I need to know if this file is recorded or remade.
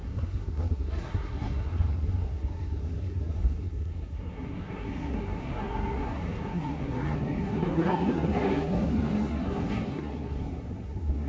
remade